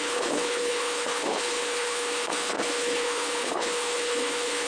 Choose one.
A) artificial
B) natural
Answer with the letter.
A